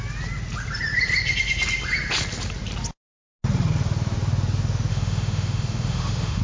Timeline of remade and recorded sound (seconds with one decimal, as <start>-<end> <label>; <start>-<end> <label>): 0.0-4.9 recorded; 4.9-6.4 remade